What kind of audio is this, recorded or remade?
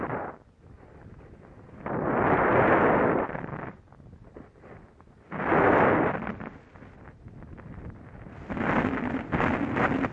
recorded